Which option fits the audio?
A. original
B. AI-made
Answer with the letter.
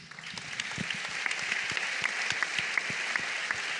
A